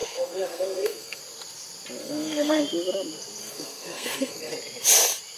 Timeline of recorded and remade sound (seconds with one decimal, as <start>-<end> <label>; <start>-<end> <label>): 0.0-1.2 remade; 1.2-2.0 recorded; 2.0-2.6 remade; 2.6-3.4 recorded; 3.4-4.5 remade; 4.5-5.4 recorded